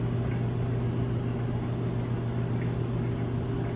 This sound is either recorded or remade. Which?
recorded